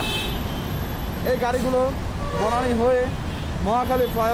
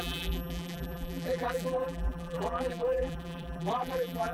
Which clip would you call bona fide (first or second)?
first